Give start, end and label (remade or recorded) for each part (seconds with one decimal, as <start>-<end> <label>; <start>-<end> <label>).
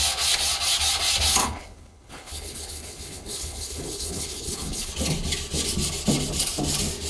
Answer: 0.0-1.4 recorded; 1.4-4.9 remade; 4.9-7.1 recorded